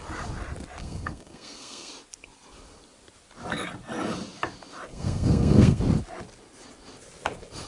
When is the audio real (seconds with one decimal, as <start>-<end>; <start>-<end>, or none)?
0.0-0.8; 1.9-4.9; 5.8-7.7